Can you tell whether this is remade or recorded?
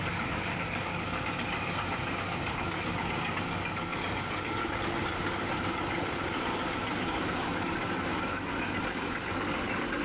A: remade